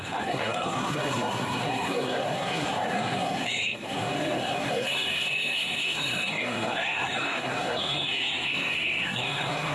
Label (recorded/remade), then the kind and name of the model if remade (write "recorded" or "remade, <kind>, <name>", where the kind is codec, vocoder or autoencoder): remade, codec, SNAC